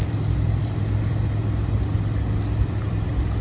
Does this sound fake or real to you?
fake